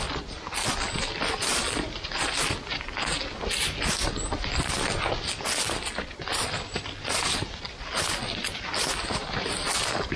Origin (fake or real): real